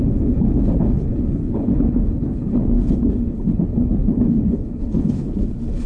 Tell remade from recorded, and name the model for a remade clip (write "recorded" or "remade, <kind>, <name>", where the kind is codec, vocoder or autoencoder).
remade, codec, HILCodec